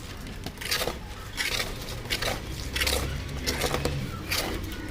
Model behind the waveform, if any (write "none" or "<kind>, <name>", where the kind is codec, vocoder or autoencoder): none